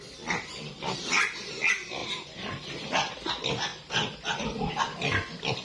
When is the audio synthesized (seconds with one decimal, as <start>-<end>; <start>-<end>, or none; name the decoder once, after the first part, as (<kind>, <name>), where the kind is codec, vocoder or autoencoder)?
2.0-3.3 (vocoder, BigVGAN v2); 3.7-4.7